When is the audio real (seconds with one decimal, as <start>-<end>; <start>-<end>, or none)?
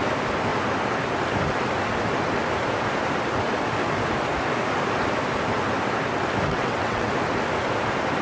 0.0-6.5; 7.1-8.2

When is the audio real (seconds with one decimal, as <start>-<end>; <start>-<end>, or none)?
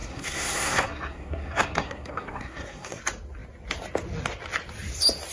3.0-5.3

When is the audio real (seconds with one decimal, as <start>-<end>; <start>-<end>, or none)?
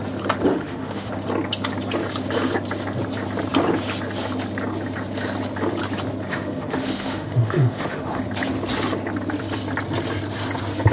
0.0-0.5; 1.1-6.3; 8.2-10.9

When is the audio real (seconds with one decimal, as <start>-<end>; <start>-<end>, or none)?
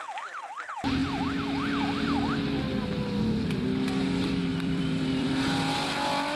0.0-4.5; 5.3-6.4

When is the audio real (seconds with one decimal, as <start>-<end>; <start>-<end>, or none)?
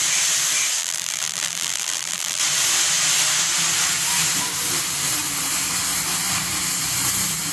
0.0-0.8; 2.4-7.5